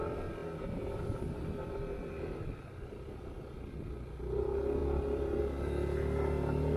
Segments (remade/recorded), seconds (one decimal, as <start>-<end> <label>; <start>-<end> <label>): 0.0-0.4 recorded; 0.4-3.4 remade; 3.4-4.8 recorded; 4.8-5.4 remade; 5.4-6.8 recorded